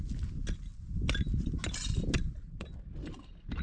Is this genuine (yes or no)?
yes